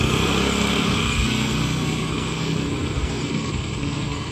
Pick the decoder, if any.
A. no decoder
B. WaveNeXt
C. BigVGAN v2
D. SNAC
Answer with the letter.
D